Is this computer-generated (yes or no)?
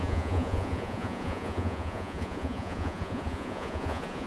yes